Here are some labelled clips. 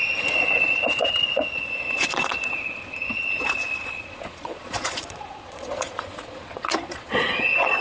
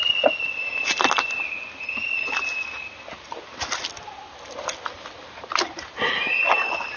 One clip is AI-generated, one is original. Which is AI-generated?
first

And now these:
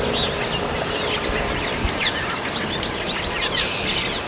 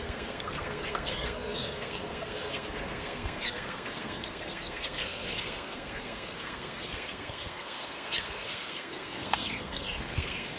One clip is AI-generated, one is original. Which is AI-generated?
second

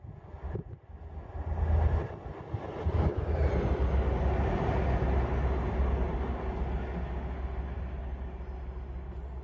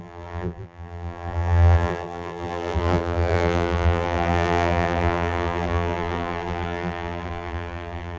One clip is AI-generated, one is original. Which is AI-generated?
second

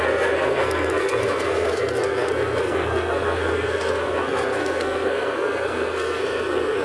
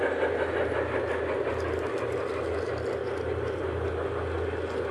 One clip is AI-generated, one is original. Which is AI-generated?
first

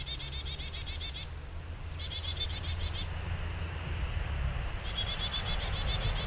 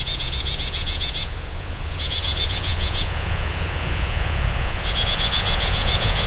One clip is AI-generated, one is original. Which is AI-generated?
second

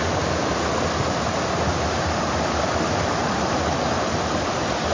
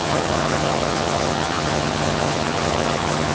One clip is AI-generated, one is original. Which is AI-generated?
second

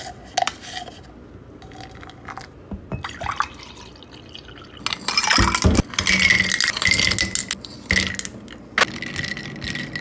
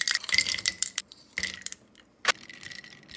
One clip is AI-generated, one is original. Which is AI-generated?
second